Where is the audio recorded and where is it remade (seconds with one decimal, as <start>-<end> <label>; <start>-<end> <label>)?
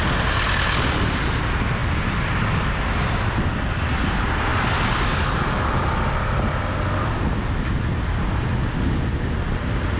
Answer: 0.0-10.0 recorded